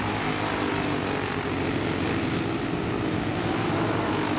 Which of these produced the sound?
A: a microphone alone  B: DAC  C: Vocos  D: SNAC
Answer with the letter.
A